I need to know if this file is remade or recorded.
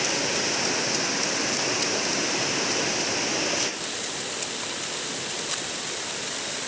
remade